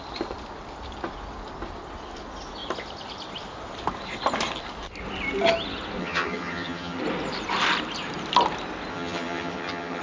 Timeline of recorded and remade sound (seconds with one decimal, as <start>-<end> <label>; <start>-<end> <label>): 0.0-6.0 recorded; 6.0-7.0 remade; 7.0-8.9 recorded; 8.9-10.0 remade